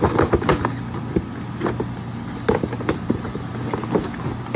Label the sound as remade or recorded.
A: recorded